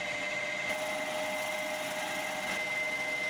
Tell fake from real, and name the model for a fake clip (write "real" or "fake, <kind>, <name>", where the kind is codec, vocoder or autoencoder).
real